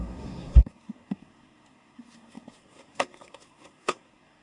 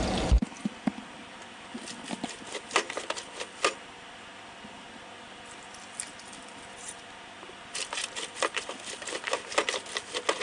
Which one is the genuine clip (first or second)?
second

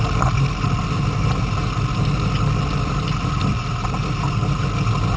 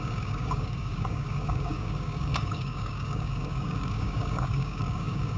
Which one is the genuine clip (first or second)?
first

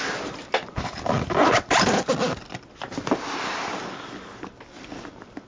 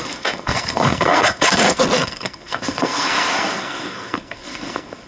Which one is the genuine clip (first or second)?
first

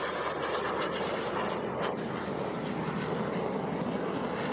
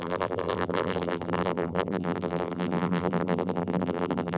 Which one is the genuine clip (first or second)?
first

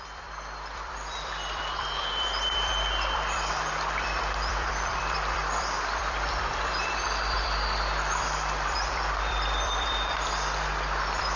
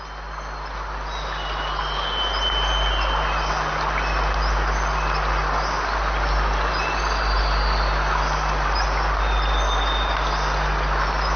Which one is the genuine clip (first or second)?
second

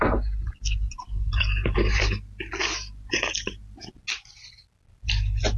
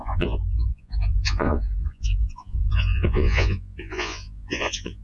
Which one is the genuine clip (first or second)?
first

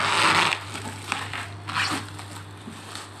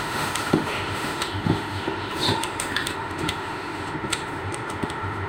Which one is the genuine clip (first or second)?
first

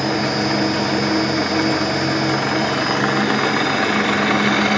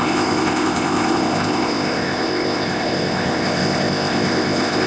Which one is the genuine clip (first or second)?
first